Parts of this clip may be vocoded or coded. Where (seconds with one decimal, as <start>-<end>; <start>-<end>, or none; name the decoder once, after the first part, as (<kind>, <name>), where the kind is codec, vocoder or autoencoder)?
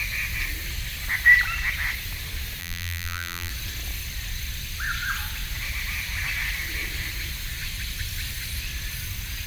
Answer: 2.6-3.5 (vocoder, BigVGAN v2)